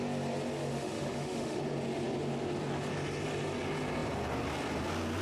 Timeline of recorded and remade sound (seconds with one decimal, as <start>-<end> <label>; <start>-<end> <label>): 0.0-0.7 recorded; 0.7-1.6 remade; 1.6-5.2 recorded